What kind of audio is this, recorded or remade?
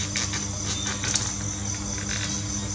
recorded